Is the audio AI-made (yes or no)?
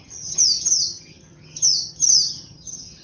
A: yes